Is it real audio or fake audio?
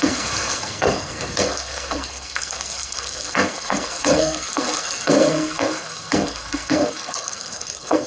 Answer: fake